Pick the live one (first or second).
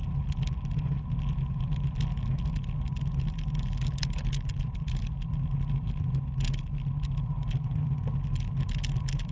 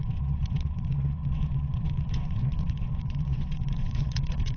first